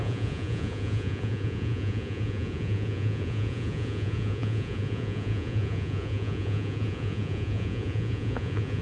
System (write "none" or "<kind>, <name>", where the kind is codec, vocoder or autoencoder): vocoder, Vocos